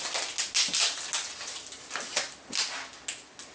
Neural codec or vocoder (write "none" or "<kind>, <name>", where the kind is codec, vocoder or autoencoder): none